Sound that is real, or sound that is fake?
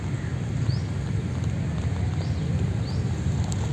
real